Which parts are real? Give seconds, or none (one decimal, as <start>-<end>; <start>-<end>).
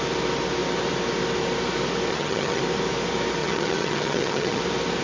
0.0-2.1; 2.6-3.4; 4.6-5.0